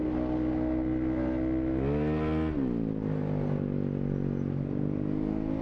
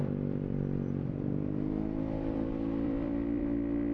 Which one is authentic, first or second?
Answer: first